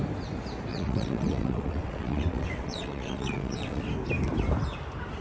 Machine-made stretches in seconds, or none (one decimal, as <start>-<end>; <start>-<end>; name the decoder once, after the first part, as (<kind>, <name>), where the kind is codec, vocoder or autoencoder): 0.7-3.8 (vocoder, WaveNeXt)